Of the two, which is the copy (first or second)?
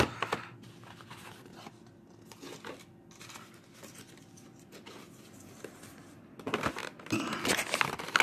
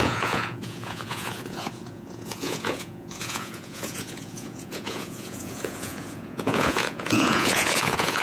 second